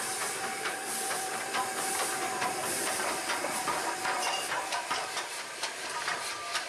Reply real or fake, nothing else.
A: real